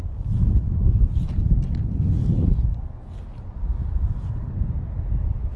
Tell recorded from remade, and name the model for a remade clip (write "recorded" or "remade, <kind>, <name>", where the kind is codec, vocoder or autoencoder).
recorded